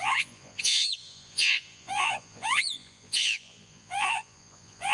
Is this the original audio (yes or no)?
no